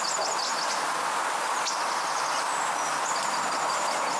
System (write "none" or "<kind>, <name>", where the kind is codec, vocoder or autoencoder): none